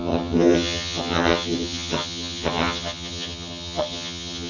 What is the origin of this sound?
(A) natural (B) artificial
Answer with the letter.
B